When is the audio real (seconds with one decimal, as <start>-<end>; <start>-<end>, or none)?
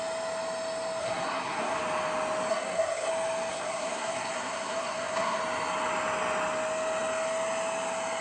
0.0-1.0; 1.8-2.5; 3.1-3.5; 5.4-8.2